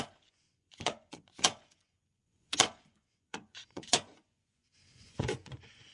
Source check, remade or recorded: remade